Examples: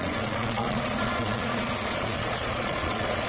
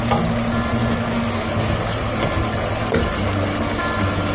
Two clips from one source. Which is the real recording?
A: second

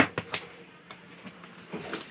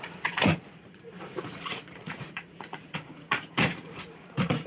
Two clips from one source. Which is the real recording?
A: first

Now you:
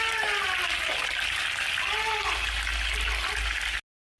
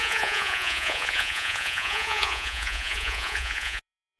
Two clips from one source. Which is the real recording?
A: first